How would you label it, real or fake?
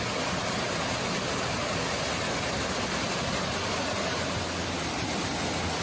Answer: real